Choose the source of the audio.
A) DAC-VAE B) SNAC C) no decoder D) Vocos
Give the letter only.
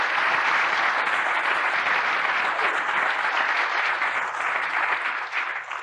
C